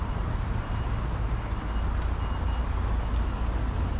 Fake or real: real